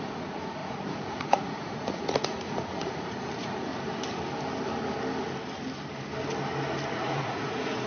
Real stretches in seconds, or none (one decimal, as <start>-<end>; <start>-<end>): 3.7-6.9